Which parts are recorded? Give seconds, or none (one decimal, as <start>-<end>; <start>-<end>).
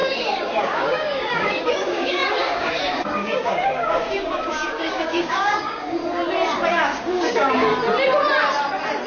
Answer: 6.0-6.7; 7.7-9.1